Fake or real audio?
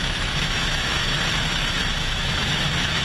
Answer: fake